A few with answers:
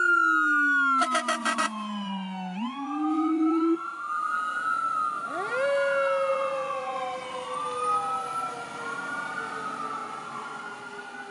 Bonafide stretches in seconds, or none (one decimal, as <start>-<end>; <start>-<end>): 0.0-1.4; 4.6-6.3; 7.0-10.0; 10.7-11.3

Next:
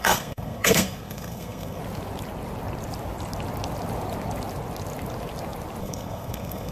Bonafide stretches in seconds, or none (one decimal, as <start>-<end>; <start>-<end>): 1.8-5.8

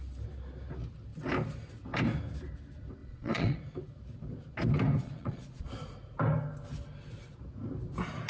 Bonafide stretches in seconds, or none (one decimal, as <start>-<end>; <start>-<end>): 0.0-3.0; 3.6-5.0; 5.7-8.3

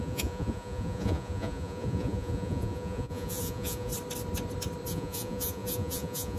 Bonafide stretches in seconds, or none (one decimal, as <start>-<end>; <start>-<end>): 3.9-4.9